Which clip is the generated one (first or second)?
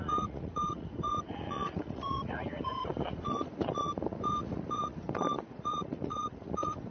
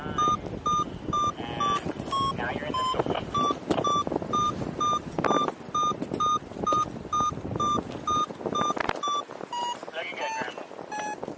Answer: first